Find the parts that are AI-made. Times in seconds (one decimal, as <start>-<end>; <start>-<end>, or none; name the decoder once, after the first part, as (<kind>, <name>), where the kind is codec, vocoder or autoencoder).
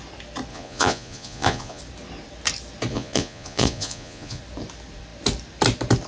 0.5-1.8 (vocoder, Vocos); 2.9-4.4